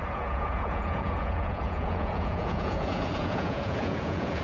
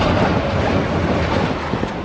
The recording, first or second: second